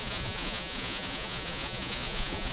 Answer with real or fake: fake